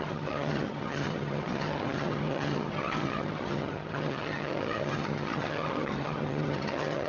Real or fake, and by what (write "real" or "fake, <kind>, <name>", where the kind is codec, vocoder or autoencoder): fake, vocoder, HiFi-GAN